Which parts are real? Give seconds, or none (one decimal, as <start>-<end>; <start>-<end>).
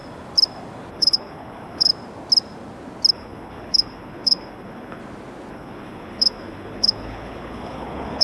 0.0-0.9; 1.9-3.1; 5.0-5.5